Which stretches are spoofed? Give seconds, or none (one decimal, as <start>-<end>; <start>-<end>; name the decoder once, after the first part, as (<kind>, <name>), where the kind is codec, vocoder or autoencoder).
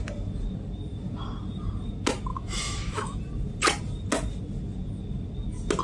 2.3-3.2 (autoencoder, DAC-VAE)